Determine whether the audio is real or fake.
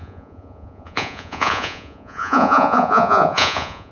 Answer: fake